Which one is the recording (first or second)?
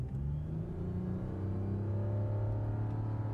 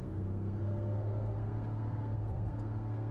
first